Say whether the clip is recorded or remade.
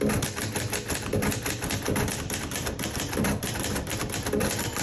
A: remade